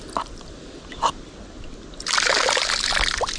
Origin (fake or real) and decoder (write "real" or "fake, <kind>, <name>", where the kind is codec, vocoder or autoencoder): real